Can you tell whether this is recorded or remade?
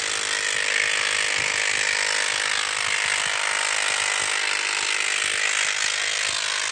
recorded